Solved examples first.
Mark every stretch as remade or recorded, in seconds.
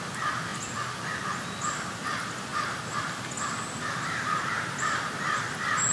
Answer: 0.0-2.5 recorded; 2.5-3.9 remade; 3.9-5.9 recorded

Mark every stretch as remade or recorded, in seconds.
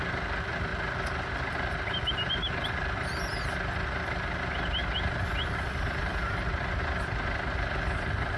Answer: 0.0-4.8 recorded; 4.8-6.6 remade; 6.6-8.4 recorded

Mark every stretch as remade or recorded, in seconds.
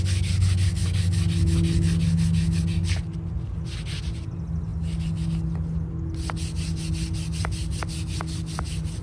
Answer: 0.0-9.0 recorded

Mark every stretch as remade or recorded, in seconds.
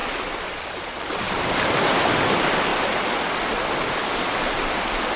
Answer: 0.0-2.7 remade; 2.7-3.8 recorded; 3.8-5.2 remade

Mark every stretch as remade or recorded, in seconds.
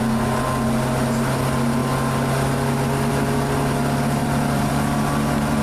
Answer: 0.0-4.2 recorded; 4.2-4.7 remade; 4.7-5.6 recorded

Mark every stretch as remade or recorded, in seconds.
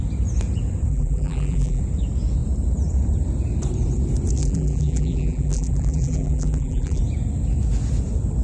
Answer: 0.0-0.9 recorded; 0.9-1.8 remade; 1.8-4.4 recorded; 4.4-7.0 remade; 7.0-8.4 recorded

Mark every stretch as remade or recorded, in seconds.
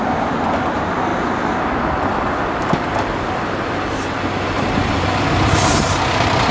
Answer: 0.0-6.5 recorded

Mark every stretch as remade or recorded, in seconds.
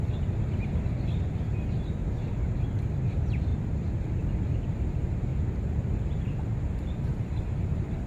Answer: 0.0-2.0 recorded; 2.0-2.5 remade; 2.5-3.5 recorded; 3.5-4.0 remade; 4.0-8.1 recorded